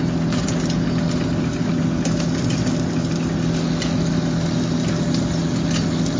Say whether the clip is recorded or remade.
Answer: recorded